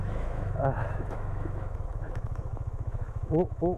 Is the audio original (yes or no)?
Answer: no